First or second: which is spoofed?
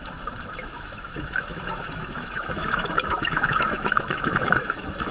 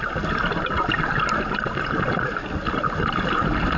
first